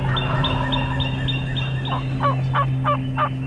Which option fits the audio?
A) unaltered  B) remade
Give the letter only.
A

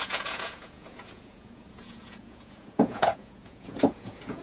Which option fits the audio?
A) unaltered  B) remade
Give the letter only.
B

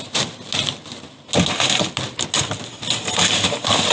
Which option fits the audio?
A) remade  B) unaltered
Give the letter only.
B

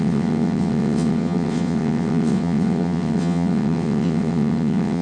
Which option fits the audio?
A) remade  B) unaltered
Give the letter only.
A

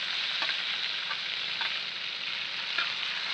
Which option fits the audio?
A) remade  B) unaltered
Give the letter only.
B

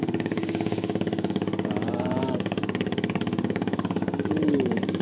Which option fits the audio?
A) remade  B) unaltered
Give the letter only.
A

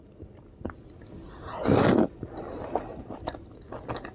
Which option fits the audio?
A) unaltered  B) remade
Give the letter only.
A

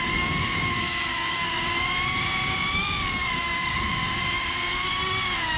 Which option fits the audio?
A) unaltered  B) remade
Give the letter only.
B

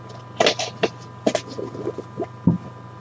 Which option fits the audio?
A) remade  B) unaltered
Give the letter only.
B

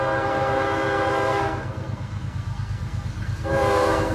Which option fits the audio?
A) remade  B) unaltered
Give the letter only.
A